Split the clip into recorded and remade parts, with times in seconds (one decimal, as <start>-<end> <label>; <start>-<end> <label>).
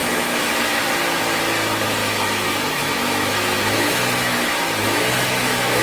0.0-0.5 remade; 0.5-2.0 recorded; 2.0-5.8 remade